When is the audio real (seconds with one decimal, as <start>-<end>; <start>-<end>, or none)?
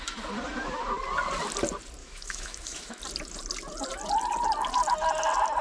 0.0-2.0; 3.0-5.6